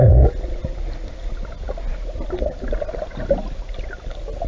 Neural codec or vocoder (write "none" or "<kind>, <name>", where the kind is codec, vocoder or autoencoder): none